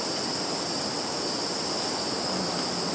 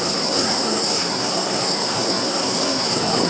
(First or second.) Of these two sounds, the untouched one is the first